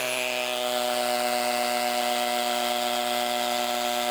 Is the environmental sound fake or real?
real